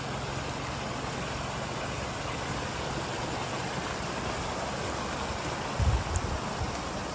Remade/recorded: recorded